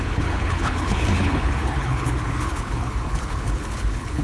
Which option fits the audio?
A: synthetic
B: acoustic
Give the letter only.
A